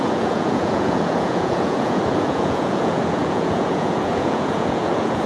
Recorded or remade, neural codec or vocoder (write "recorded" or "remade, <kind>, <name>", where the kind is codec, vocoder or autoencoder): remade, vocoder, Vocos